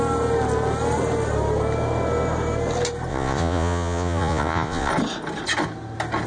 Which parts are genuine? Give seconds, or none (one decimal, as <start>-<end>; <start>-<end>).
0.0-3.1; 4.9-6.3